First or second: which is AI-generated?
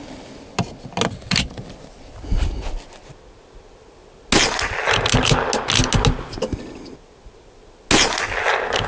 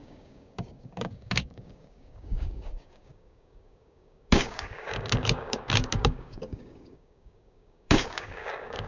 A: second